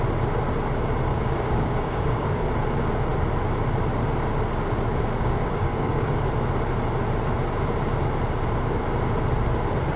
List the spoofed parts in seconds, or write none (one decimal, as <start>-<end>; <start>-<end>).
1.1-2.5; 5.2-6.2